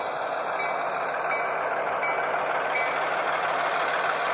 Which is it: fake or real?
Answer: real